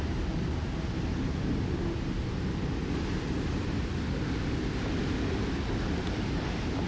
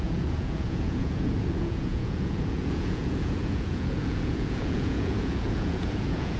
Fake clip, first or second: second